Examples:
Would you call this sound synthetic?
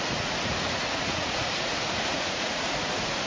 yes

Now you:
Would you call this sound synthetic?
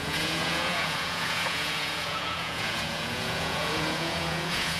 yes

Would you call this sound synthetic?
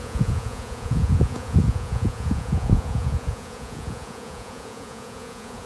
yes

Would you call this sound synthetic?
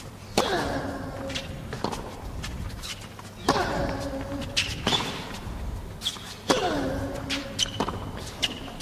no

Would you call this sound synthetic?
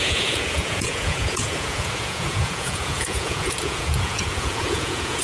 yes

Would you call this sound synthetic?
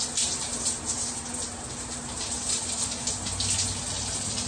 no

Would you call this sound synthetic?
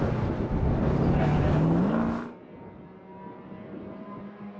no